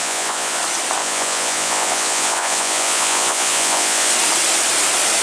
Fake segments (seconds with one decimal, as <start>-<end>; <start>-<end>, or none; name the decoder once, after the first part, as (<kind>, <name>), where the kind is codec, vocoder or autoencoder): 0.0-0.6 (vocoder, Vocos); 1.0-4.1